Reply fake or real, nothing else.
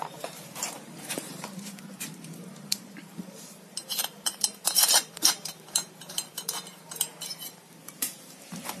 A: fake